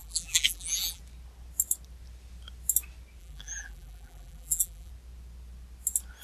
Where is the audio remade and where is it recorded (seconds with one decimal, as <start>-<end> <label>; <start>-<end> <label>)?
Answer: 0.0-1.0 remade; 1.0-3.2 recorded; 3.2-4.9 remade; 4.9-6.2 recorded